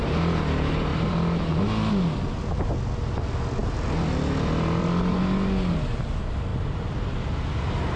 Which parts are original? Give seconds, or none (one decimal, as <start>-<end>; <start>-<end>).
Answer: 0.0-0.9; 1.6-6.5; 7.1-8.0